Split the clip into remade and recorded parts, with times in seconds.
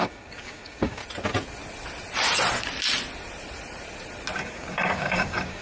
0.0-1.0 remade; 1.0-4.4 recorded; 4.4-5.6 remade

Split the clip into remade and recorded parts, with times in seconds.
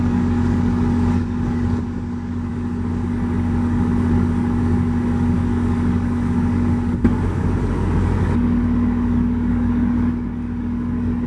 0.0-11.3 remade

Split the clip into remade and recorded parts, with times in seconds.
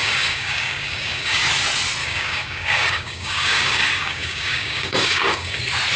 0.0-1.4 remade; 1.4-2.0 recorded; 2.0-5.6 remade; 5.6-6.0 recorded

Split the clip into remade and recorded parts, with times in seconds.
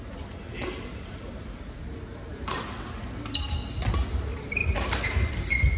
0.0-5.8 recorded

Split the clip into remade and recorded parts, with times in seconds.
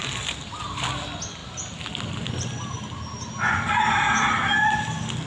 0.0-5.3 recorded